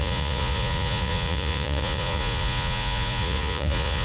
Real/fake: fake